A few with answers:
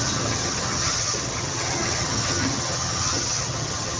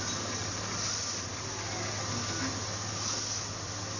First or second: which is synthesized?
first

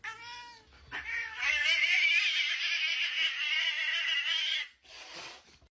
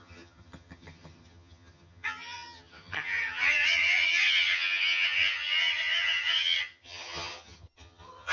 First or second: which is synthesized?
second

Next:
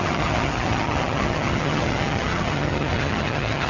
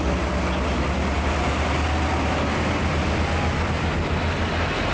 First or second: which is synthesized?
first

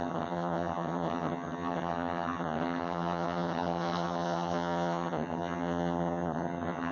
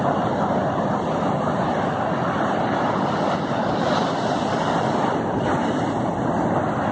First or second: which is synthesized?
first